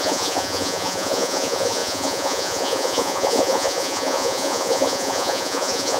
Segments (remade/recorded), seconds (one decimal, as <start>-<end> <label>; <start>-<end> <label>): 0.0-6.0 remade